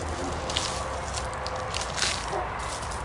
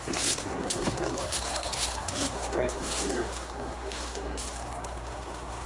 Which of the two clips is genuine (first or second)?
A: first